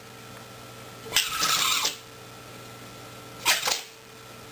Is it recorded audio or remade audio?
recorded